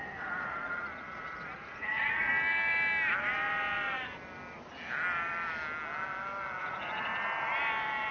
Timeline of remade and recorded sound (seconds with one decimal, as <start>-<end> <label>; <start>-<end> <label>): 0.0-2.3 remade; 2.3-6.6 recorded; 6.6-7.1 remade; 7.1-8.1 recorded

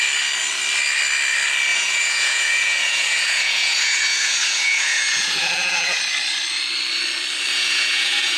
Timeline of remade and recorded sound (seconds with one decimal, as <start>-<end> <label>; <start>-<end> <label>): 0.0-1.7 recorded; 1.7-6.0 remade; 6.0-7.5 recorded; 7.5-8.4 remade

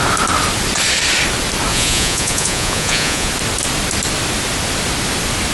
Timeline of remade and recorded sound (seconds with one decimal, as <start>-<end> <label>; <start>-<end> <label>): 0.0-1.7 recorded; 1.7-3.3 remade; 3.3-5.5 recorded

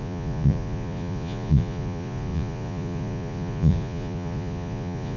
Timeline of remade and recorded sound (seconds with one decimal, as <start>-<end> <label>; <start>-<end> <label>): 0.0-5.2 remade

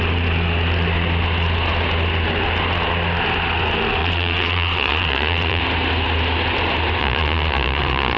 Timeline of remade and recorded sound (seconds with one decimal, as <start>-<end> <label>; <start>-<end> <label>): 0.0-4.0 recorded; 4.0-5.6 remade; 5.6-7.0 recorded; 7.0-8.2 remade

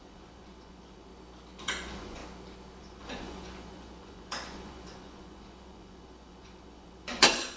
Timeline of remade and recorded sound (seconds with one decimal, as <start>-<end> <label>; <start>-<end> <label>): 0.0-1.1 remade; 1.1-1.6 recorded; 1.6-2.2 remade; 2.2-2.8 recorded; 2.8-7.6 remade

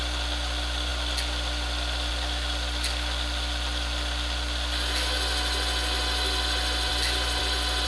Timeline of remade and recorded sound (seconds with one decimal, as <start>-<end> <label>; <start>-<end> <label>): 0.0-7.9 recorded

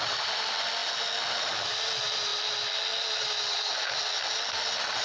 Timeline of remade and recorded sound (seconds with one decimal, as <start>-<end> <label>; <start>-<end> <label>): 0.0-5.0 recorded